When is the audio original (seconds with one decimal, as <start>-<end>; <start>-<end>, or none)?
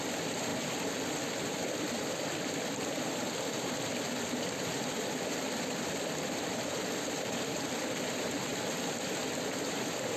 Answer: 0.0-10.2